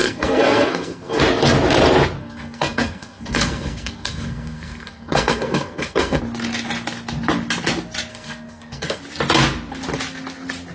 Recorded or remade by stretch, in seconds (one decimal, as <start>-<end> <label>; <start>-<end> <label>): 0.0-1.2 remade; 1.2-2.2 recorded; 2.2-6.2 remade; 6.2-8.1 recorded; 8.1-9.0 remade; 9.0-10.7 recorded